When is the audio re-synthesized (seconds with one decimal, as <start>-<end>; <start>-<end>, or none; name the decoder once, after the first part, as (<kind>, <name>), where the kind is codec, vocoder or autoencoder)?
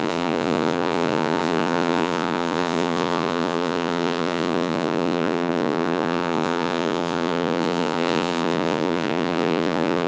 0.0-10.1 (vocoder, Vocos)